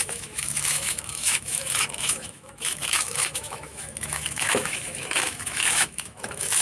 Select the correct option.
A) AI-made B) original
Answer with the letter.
A